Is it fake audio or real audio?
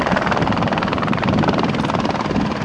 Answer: real